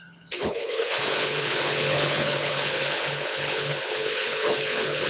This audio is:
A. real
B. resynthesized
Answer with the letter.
B